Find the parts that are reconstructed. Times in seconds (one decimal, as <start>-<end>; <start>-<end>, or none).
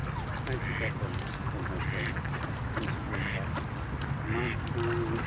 none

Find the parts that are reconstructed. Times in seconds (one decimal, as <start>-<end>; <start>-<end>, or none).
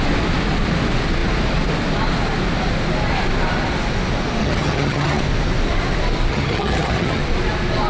4.4-5.2; 6.3-7.2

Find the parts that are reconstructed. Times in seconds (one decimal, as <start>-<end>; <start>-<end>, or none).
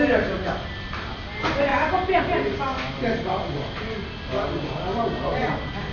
none